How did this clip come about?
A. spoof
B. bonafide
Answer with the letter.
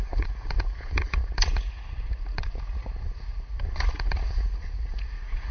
A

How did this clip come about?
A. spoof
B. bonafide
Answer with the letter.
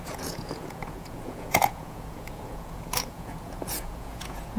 A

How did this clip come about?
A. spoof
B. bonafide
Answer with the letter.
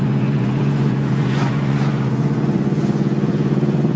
A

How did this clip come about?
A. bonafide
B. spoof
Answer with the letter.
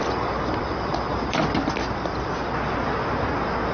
A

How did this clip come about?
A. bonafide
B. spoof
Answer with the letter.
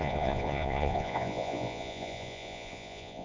B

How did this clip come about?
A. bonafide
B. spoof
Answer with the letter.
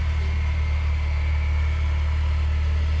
A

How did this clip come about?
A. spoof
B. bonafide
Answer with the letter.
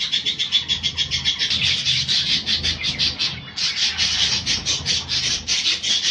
B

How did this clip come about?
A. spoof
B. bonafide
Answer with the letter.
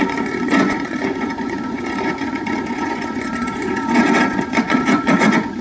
A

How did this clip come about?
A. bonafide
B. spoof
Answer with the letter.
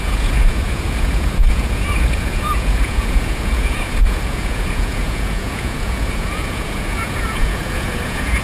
B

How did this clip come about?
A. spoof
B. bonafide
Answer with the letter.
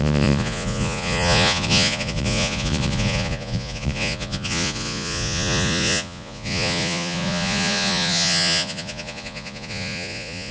A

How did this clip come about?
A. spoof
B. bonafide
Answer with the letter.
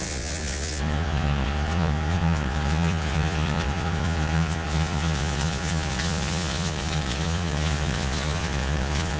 A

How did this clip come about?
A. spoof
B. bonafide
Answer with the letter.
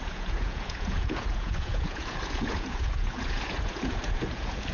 A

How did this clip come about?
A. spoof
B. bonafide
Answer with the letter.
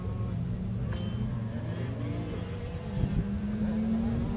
B